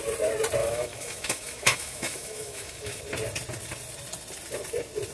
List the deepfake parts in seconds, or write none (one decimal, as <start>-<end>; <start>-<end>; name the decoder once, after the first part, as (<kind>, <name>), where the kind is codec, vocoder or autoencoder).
0.6-3.0 (autoencoder, DAC-VAE)